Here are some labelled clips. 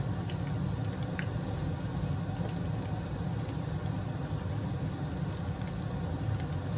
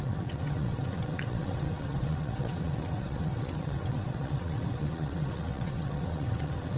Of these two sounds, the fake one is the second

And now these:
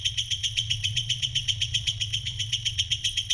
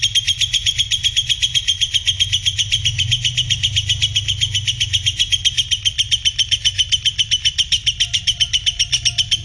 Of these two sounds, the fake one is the first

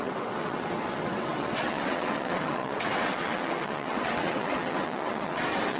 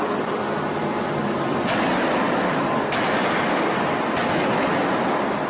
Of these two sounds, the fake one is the first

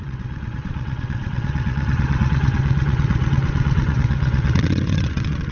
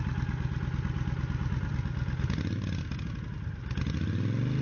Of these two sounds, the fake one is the first